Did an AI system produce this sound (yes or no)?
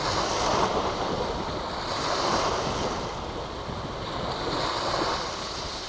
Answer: no